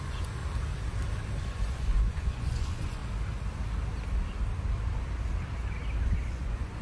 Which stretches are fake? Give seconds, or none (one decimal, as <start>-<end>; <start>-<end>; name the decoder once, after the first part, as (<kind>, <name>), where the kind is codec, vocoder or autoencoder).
0.0-0.4 (vocoder, Vocos); 1.4-3.0; 6.3-6.8